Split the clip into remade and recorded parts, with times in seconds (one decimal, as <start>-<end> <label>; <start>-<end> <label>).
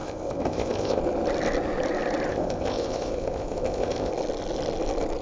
0.0-1.0 remade; 1.0-2.3 recorded; 2.3-4.1 remade; 4.1-5.2 recorded